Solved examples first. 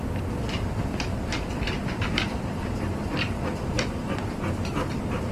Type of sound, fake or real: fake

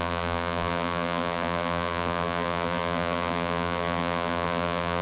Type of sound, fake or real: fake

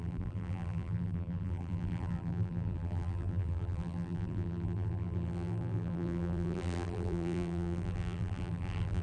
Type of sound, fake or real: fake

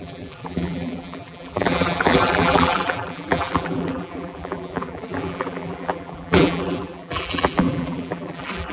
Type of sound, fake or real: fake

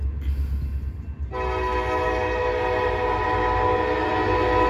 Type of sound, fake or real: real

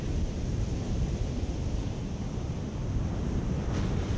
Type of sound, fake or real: real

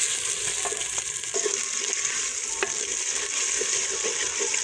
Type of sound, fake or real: real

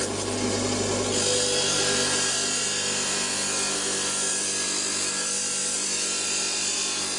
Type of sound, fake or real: fake